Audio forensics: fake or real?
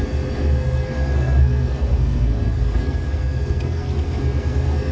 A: fake